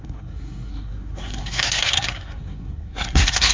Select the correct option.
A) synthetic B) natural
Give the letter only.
A